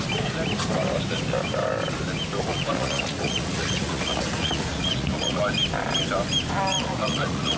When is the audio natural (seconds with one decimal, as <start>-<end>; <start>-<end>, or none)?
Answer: 0.0-2.5; 5.4-6.7